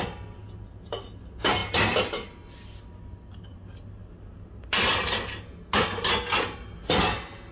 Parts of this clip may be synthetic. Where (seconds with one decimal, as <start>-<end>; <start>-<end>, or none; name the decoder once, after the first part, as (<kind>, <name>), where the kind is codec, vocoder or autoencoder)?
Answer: none